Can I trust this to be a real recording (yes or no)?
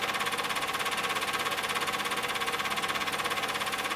yes